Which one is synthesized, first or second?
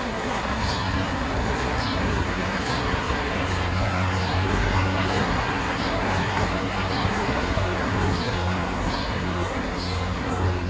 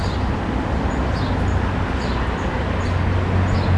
first